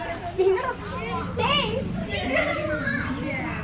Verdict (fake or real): real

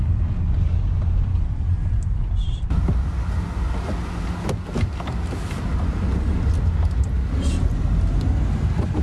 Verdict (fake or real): real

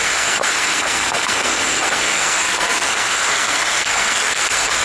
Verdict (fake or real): fake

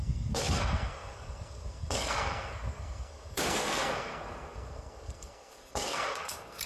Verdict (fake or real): fake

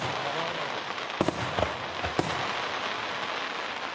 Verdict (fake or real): real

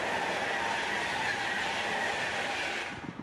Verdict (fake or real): real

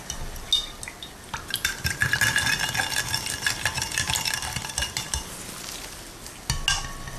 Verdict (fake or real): real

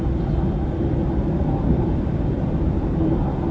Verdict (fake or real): real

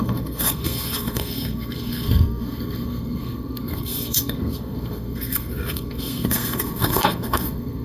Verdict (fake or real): fake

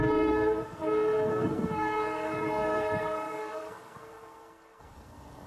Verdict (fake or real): fake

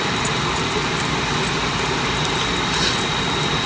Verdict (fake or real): real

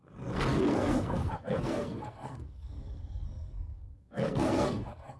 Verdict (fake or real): fake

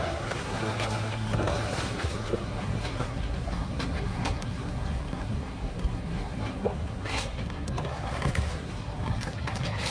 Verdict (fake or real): fake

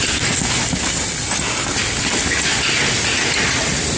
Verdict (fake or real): real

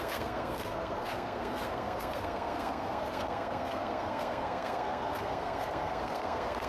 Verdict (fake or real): fake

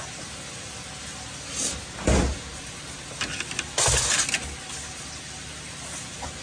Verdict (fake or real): real